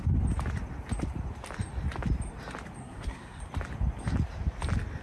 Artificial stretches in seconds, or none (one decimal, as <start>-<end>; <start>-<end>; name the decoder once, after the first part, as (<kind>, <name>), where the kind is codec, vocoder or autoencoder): 2.8-3.4 (codec, SNAC)